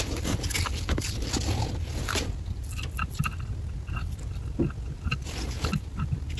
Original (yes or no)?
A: yes